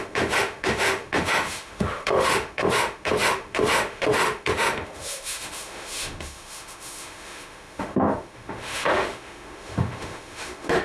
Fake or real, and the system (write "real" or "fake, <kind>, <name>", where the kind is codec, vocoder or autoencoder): fake, autoencoder, DAC-VAE